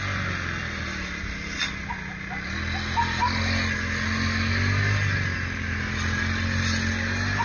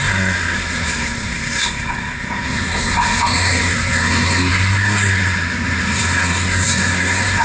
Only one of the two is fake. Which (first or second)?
second